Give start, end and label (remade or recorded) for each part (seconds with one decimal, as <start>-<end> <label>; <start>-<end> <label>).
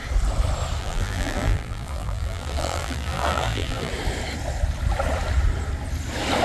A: 0.0-0.8 recorded; 0.8-3.9 remade; 3.9-6.4 recorded